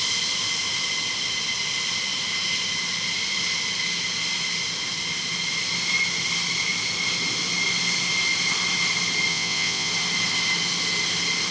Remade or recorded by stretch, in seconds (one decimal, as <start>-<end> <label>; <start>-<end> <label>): 0.0-9.3 recorded; 9.3-9.9 remade; 9.9-11.5 recorded